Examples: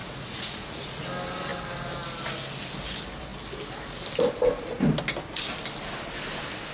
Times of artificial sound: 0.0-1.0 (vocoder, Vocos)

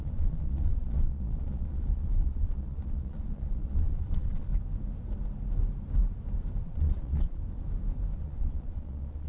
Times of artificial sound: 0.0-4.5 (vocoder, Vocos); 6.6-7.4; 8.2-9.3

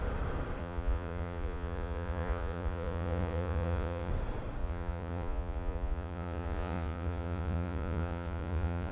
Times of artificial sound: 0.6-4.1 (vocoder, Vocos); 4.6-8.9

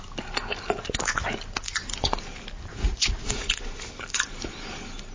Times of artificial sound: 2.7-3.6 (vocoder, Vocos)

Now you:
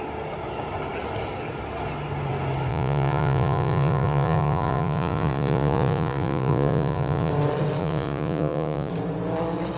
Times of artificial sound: 2.7-7.3 (vocoder, Vocos); 7.8-8.9

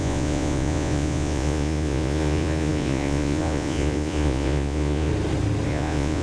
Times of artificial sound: 0.0-5.1 (vocoder, Vocos); 5.7-6.2